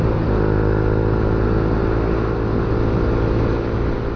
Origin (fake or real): real